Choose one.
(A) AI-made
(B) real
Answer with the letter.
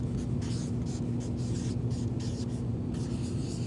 B